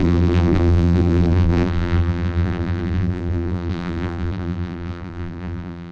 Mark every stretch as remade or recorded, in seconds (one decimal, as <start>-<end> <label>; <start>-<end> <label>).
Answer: 0.0-5.9 remade